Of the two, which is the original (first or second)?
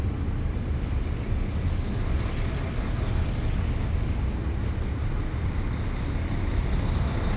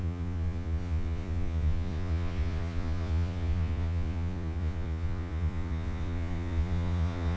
first